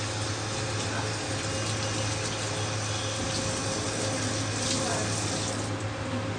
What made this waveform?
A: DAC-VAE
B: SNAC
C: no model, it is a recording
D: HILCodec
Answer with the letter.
C